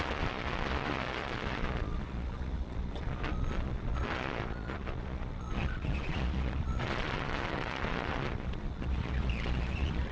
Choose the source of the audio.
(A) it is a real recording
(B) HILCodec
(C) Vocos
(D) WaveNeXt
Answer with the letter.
C